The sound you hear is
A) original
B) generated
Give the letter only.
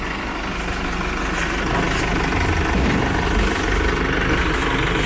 A